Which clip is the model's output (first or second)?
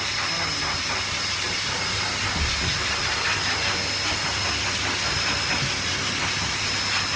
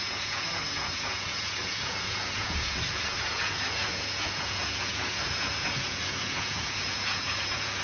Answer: second